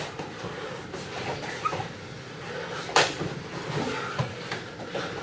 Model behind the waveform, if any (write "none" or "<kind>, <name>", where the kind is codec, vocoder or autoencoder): none